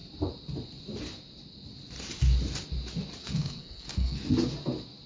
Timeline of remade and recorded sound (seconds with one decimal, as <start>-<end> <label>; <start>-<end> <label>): 0.0-3.2 recorded; 3.2-4.3 remade; 4.3-5.1 recorded